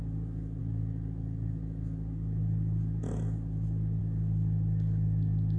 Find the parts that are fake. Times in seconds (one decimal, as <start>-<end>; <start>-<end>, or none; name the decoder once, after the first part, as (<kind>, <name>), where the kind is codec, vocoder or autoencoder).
none